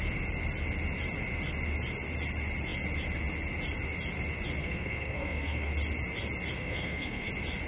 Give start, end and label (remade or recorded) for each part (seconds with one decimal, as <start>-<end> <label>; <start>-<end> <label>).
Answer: 0.0-4.6 recorded; 4.6-5.7 remade; 5.7-6.6 recorded; 6.6-7.3 remade; 7.3-7.7 recorded